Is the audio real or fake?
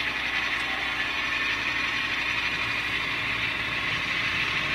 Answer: real